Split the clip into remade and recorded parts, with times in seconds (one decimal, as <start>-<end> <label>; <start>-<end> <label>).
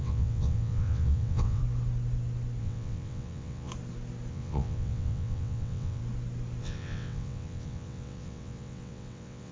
0.0-1.6 remade; 1.6-2.6 recorded; 2.6-3.7 remade; 3.7-4.3 recorded; 4.3-6.0 remade; 6.0-6.6 recorded; 6.6-9.5 remade